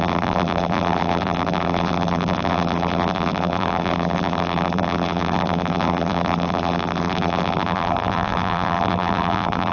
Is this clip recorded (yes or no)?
no